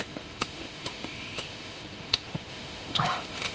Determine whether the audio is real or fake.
fake